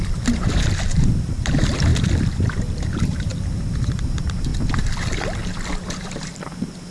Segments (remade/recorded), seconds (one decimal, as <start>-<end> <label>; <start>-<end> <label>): 0.0-1.9 remade; 1.9-2.7 recorded; 2.7-4.5 remade; 4.5-6.0 recorded; 6.0-6.9 remade